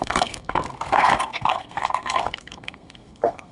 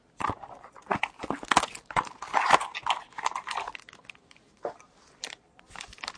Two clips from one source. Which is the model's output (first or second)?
first